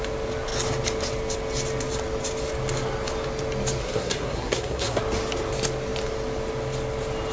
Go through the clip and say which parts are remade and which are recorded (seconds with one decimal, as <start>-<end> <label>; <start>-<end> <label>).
0.0-3.8 recorded; 3.8-5.0 remade; 5.0-7.3 recorded